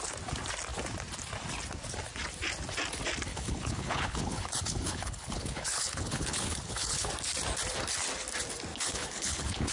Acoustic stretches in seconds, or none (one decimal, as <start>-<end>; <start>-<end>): 0.0-3.3; 7.1-8.7